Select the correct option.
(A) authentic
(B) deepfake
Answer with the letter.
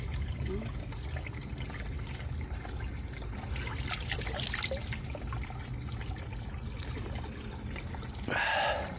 A